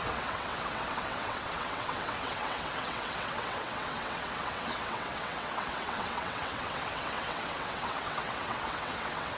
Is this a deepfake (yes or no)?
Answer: yes